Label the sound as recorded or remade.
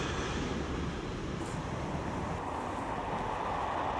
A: recorded